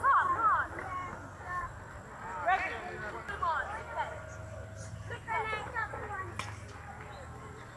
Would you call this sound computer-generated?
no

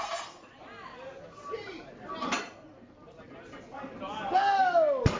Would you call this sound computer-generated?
no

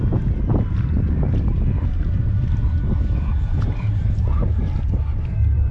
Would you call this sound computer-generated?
no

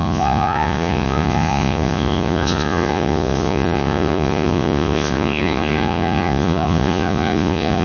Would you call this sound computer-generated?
yes